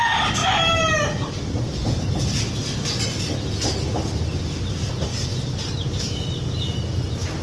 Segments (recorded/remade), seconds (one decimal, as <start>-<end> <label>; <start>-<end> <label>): 0.0-7.4 recorded